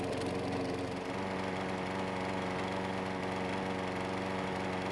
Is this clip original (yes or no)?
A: yes